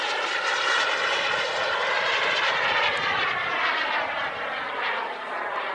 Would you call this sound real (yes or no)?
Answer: no